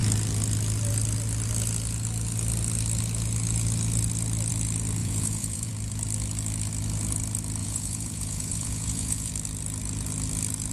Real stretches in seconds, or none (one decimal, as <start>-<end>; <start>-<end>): 0.0-5.0; 5.7-7.6; 9.3-10.7